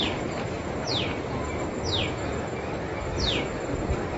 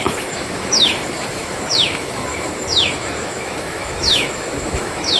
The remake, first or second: second